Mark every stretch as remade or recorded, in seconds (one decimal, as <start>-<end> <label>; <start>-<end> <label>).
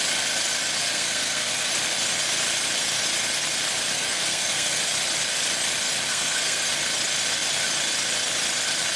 0.0-0.8 recorded; 0.8-1.7 remade; 1.7-3.9 recorded; 3.9-4.8 remade; 4.8-6.1 recorded; 6.1-6.7 remade; 6.7-9.0 recorded